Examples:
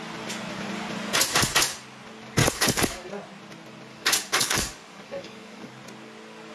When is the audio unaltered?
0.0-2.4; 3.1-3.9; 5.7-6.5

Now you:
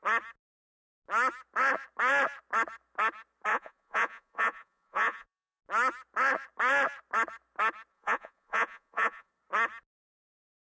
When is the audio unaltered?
0.0-3.5; 5.6-7.9; 9.3-10.7

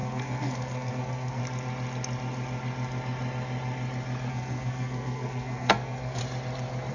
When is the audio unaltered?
1.4-4.3; 6.2-6.9

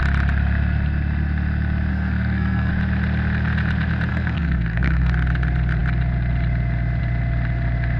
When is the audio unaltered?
0.0-1.9; 2.7-4.1; 5.1-8.0